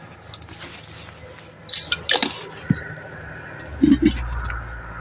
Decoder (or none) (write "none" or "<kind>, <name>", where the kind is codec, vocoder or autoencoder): none